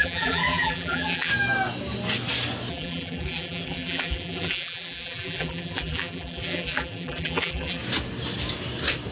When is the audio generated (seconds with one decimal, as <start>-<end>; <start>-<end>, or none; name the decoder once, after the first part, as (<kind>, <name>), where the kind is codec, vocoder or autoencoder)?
0.0-1.3 (vocoder, BigVGAN v2); 2.7-7.8